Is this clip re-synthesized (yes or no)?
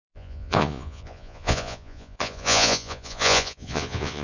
yes